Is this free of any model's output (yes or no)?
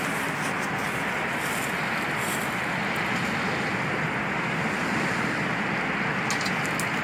yes